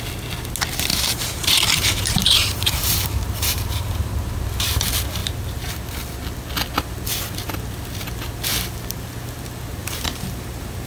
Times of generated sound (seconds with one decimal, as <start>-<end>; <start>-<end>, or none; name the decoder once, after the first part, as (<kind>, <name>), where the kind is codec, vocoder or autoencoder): 0.9-4.1 (vocoder, BigVGAN v2); 9.8-10.9